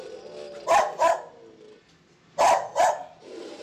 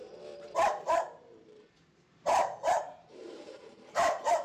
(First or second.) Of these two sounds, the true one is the first